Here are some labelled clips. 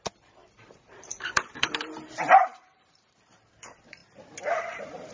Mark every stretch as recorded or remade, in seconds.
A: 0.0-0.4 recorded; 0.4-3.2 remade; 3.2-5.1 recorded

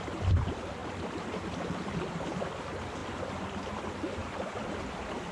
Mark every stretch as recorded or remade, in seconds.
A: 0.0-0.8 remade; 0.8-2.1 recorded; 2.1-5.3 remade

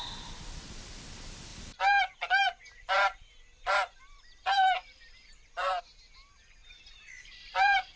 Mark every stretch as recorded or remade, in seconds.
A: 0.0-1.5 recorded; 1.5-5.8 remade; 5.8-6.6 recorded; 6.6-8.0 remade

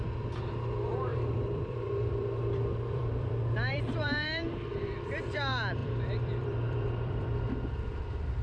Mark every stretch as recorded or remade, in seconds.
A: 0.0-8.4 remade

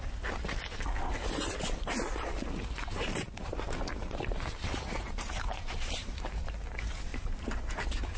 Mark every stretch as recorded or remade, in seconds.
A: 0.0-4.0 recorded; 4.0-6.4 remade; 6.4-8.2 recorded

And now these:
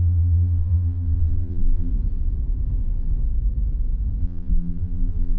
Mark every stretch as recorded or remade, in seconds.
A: 0.0-1.9 remade; 1.9-4.2 recorded; 4.2-5.4 remade